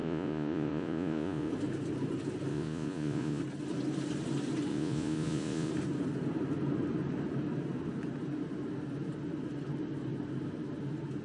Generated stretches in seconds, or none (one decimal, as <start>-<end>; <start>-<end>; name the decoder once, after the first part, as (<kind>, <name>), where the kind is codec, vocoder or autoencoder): 0.0-1.5 (vocoder, Vocos); 2.5-3.4; 4.7-5.7